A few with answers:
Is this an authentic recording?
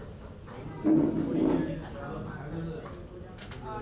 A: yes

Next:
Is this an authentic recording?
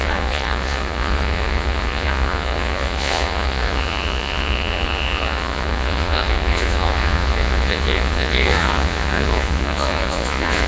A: no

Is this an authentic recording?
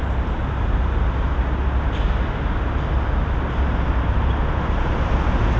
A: yes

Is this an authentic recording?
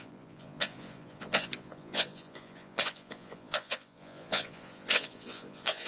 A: no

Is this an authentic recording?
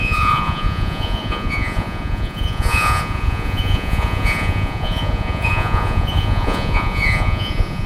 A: no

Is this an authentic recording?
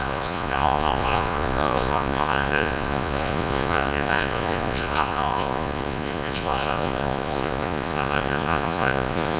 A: no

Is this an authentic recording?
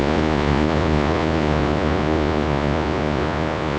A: no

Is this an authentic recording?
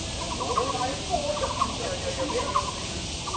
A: yes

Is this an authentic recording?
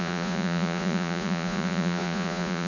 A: no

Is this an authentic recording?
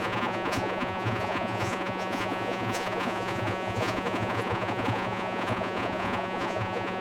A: no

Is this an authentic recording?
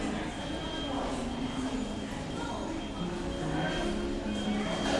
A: yes